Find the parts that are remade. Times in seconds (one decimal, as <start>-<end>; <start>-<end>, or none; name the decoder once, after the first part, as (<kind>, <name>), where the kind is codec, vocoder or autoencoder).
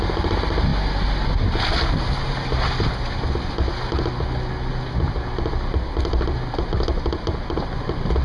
none